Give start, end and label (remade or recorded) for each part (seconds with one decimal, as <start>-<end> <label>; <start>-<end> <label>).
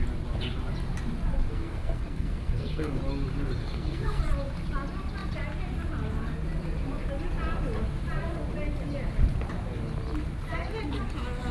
0.0-1.5 recorded; 1.5-3.0 remade; 3.0-3.6 recorded; 3.6-4.2 remade; 4.2-11.5 recorded